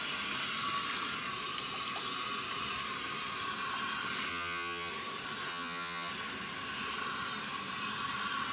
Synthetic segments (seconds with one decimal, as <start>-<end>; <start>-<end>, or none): 4.3-4.9; 5.5-6.1